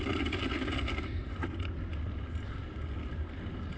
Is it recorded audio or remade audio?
remade